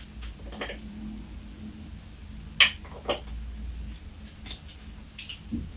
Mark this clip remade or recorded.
recorded